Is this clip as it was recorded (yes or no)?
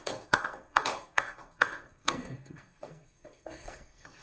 no